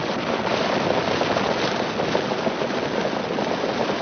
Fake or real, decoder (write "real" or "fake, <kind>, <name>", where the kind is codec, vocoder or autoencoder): real